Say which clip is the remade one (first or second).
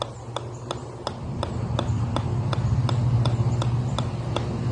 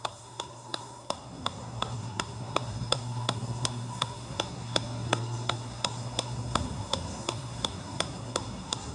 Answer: second